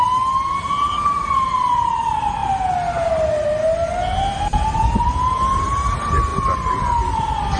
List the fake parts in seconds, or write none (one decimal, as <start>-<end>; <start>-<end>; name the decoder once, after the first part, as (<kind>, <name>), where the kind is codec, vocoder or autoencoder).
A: none